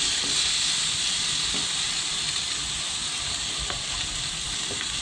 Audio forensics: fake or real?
real